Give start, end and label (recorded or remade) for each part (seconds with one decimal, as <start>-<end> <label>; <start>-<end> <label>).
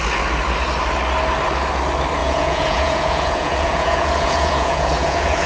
0.0-2.2 recorded; 2.2-5.5 remade